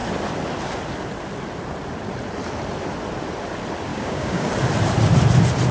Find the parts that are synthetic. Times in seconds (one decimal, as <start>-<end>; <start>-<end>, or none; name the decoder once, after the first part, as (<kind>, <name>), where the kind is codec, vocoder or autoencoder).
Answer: 3.9-4.5 (codec, DAC)